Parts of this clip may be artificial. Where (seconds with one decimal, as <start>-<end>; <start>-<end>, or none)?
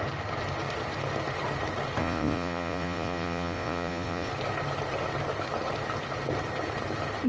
2.0-4.3